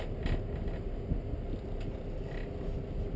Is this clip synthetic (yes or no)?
no